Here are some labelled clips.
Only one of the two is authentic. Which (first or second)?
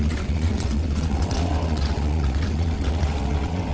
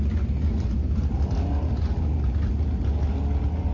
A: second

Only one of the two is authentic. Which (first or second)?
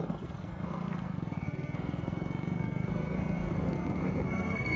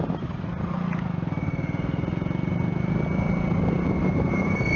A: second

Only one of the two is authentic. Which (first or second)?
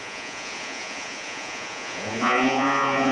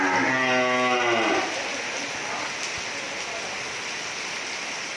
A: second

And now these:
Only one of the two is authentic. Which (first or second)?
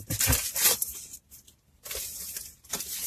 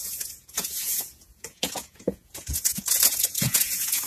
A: first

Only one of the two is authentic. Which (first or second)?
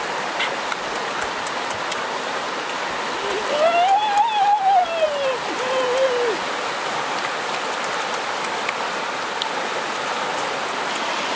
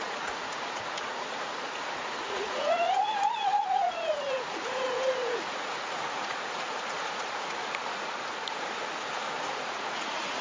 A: first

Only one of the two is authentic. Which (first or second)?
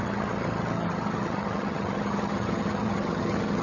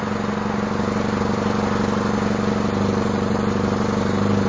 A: second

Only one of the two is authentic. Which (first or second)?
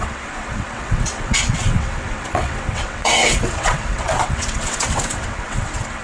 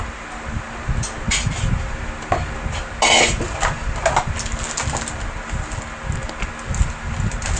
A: second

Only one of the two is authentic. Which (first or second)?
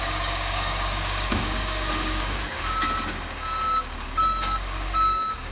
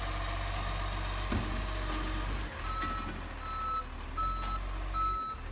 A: second